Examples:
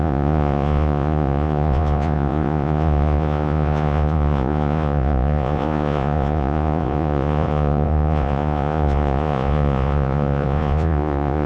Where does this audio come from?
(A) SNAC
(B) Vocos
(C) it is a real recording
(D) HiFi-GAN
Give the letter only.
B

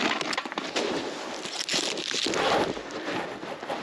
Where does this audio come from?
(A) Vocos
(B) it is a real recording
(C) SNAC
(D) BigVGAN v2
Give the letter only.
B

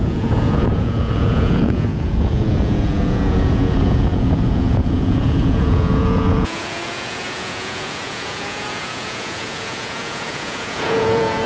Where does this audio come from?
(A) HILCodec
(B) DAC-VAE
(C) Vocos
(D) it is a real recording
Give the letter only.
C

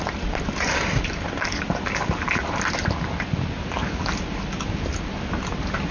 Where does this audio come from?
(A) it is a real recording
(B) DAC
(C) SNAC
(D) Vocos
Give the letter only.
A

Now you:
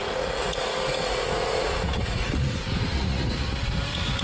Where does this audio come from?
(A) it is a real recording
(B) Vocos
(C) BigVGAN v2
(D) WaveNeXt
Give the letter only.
B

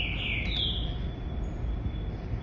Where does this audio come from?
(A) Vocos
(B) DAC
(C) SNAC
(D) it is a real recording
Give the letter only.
D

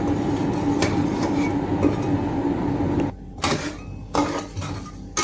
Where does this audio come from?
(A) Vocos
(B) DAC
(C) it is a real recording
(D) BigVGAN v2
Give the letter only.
C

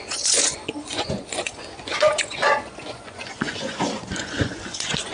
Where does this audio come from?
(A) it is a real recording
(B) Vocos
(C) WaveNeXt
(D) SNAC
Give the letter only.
B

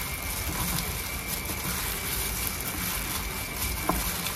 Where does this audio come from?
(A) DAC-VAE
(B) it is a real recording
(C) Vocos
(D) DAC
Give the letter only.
B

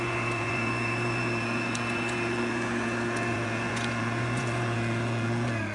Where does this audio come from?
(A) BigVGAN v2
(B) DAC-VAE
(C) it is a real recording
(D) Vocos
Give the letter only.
D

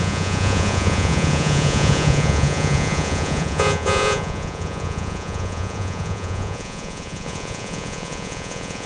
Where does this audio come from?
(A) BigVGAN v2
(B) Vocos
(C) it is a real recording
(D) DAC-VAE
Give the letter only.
B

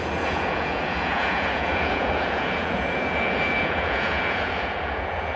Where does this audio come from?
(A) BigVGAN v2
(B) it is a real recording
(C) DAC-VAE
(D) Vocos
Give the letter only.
D